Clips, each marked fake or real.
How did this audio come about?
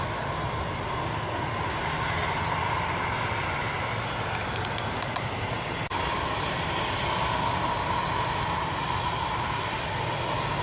real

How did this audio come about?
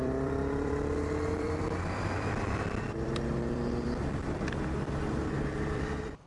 fake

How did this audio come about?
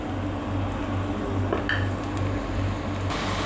real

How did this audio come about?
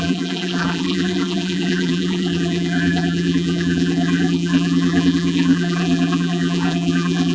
fake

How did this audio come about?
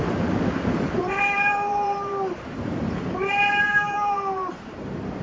fake